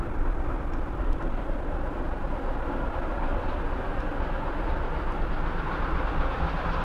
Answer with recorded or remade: recorded